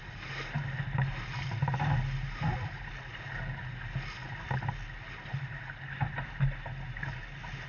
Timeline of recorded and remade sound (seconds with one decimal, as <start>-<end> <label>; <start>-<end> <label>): 0.0-7.7 recorded